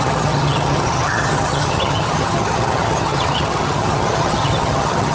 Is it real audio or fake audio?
fake